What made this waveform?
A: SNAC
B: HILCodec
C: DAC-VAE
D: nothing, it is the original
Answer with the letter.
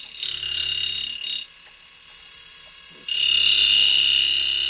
D